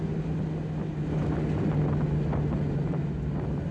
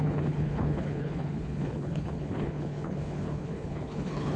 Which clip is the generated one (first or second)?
second